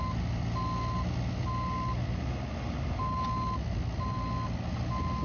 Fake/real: real